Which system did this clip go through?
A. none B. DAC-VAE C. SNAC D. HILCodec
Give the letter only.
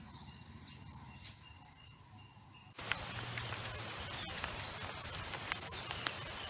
A